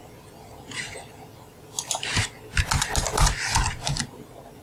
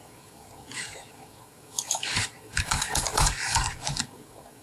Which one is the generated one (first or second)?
second